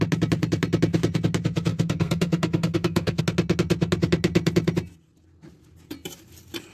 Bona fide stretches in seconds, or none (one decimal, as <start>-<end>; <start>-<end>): 0.0-1.7; 3.2-6.7